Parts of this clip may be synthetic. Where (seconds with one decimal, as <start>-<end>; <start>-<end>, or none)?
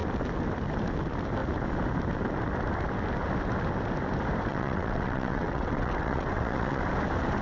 4.5-6.8